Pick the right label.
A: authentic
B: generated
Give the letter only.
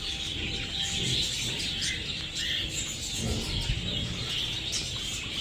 A